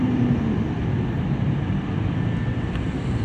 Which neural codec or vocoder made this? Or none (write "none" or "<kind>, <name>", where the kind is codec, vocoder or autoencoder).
vocoder, BigVGAN v2